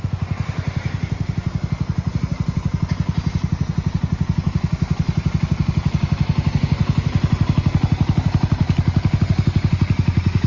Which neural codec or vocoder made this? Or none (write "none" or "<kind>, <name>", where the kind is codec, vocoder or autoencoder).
none